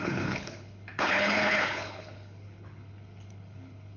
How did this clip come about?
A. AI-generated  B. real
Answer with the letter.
A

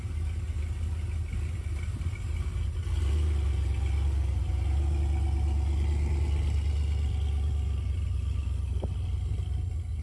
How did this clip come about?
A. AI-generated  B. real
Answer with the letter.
B